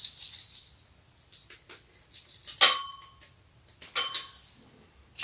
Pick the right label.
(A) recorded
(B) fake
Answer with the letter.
A